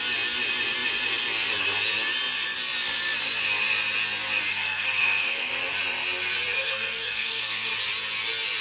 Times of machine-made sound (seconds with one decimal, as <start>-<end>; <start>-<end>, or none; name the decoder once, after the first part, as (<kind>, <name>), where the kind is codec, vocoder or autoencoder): 4.5-5.5 (codec, SNAC); 6.6-7.7